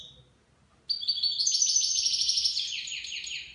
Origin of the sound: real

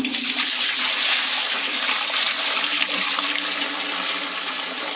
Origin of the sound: real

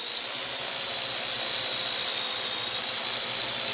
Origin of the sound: real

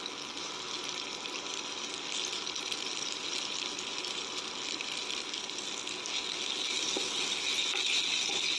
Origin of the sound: real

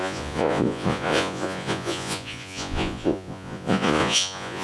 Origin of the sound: fake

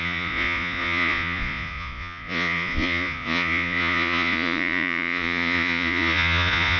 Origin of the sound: fake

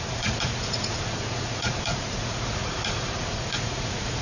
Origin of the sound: fake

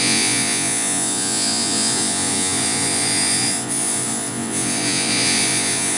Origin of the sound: fake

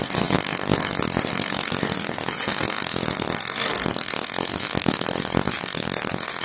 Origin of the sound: real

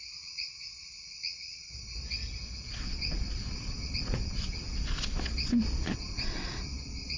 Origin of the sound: fake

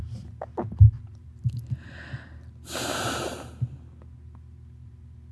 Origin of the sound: real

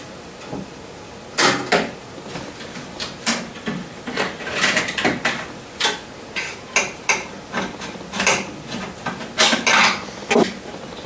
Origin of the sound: real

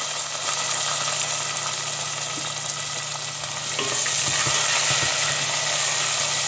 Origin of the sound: real